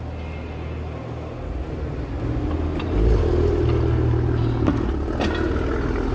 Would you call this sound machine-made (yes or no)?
no